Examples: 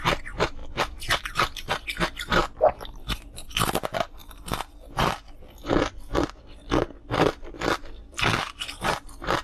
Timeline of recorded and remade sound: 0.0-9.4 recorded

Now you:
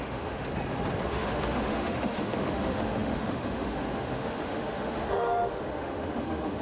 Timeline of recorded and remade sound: 0.0-0.5 remade; 0.5-1.1 recorded; 1.1-6.6 remade

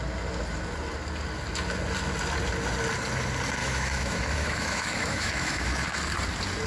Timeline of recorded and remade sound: 0.0-3.6 recorded; 3.6-6.0 remade; 6.0-6.7 recorded

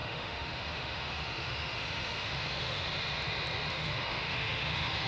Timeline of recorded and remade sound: 0.0-2.8 remade; 2.8-3.7 recorded; 3.7-5.1 remade

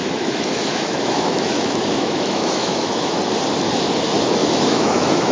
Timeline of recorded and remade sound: 0.0-3.2 remade; 3.2-4.4 recorded; 4.4-5.3 remade

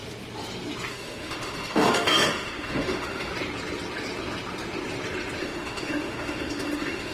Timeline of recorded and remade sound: 0.0-0.9 recorded; 0.9-3.3 remade; 3.3-5.4 recorded; 5.4-7.1 remade

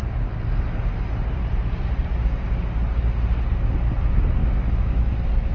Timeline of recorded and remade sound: 0.0-4.4 recorded; 4.4-5.1 remade; 5.1-5.5 recorded

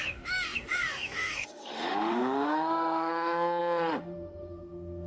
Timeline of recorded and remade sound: 0.0-5.1 remade